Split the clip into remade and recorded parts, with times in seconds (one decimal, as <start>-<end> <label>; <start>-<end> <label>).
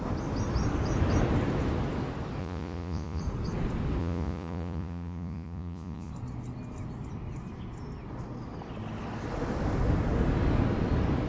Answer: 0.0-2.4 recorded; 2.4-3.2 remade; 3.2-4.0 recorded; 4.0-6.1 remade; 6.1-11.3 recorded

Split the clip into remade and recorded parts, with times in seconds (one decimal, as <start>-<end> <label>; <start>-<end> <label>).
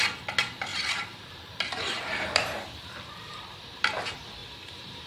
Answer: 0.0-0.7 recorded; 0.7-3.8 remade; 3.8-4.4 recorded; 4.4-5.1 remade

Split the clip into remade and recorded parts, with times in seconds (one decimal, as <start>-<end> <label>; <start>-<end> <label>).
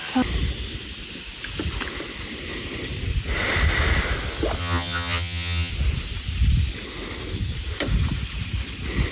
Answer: 0.0-4.6 recorded; 4.6-5.7 remade; 5.7-9.1 recorded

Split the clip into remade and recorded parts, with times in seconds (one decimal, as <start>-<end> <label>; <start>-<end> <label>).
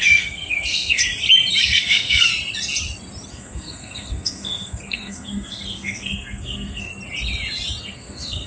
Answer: 0.0-1.0 remade; 1.0-1.6 recorded; 1.6-2.3 remade; 2.3-3.3 recorded; 3.3-6.9 remade; 6.9-7.8 recorded; 7.8-8.5 remade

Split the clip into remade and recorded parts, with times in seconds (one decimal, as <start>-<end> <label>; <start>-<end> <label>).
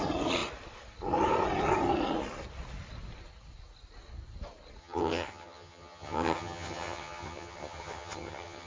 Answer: 0.0-4.8 recorded; 4.8-8.7 remade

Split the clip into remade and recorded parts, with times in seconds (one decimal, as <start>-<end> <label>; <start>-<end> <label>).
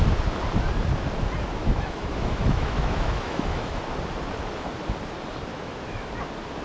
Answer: 0.0-1.6 recorded; 1.6-3.8 remade; 3.8-5.5 recorded; 5.5-6.1 remade; 6.1-6.6 recorded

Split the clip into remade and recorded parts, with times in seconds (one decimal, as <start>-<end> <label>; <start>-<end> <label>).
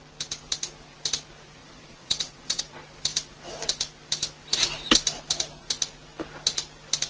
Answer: 0.0-1.6 recorded; 1.6-2.6 remade; 2.6-7.1 recorded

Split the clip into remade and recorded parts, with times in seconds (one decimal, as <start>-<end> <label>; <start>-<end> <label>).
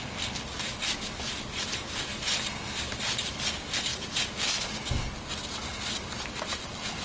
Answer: 0.0-7.0 recorded